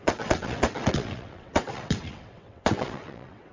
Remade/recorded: remade